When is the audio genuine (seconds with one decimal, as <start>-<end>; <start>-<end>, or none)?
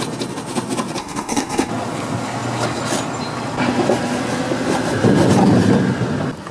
0.0-1.0; 1.7-6.5